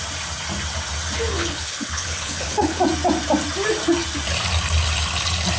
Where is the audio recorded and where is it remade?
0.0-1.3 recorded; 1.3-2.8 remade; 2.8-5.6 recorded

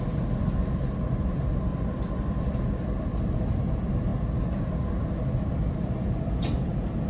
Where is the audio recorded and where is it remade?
0.0-1.7 recorded; 1.7-2.5 remade; 2.5-7.1 recorded

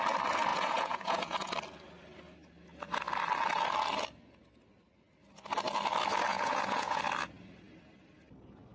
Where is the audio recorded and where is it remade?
0.0-0.5 recorded; 0.5-1.5 remade; 1.5-6.3 recorded; 6.3-7.0 remade; 7.0-8.7 recorded

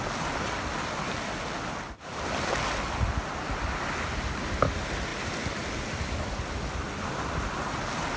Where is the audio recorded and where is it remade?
0.0-8.2 recorded

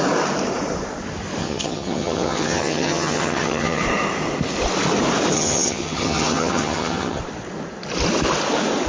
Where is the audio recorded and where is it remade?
0.0-1.4 recorded; 1.4-3.8 remade; 3.8-5.3 recorded; 5.3-7.2 remade; 7.2-8.9 recorded

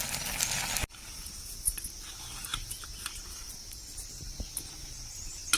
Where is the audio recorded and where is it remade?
0.0-5.6 recorded